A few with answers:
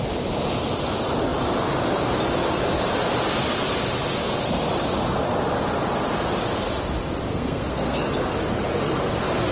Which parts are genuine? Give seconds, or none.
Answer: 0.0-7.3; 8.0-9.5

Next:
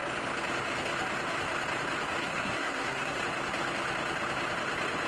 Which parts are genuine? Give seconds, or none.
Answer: 0.0-2.2; 3.2-5.1

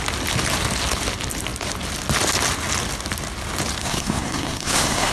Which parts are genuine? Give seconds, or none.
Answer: 0.0-3.8

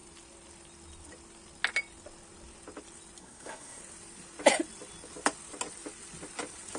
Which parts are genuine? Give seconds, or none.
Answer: 0.0-3.2; 3.8-6.8

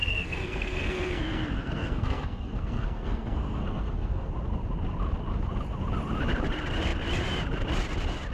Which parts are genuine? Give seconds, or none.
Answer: 4.3-8.3

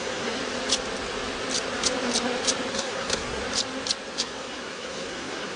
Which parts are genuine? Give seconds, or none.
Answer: 0.4-2.7; 3.4-4.1

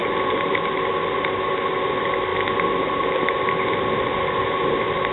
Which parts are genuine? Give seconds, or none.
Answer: 0.0-5.1